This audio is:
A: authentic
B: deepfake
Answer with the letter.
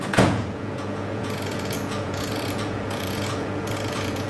B